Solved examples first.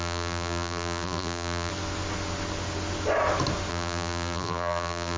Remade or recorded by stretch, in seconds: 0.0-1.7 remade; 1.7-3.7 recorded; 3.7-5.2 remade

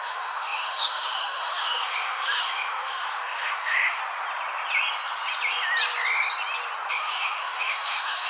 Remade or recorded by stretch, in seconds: 0.0-4.0 remade; 4.0-6.9 recorded; 6.9-8.3 remade

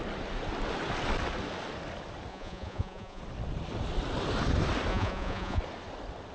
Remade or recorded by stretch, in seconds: 0.0-2.3 recorded; 2.3-3.2 remade; 3.2-4.9 recorded; 4.9-5.6 remade; 5.6-6.3 recorded

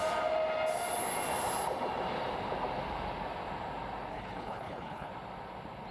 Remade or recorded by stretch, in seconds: 0.0-4.1 recorded; 4.1-5.1 remade; 5.1-5.9 recorded

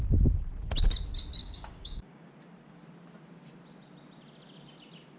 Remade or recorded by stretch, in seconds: 0.0-1.4 recorded; 1.4-2.3 remade; 2.3-5.2 recorded

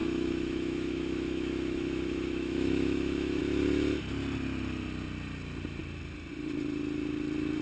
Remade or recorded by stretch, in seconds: 0.0-3.4 remade; 3.4-7.6 recorded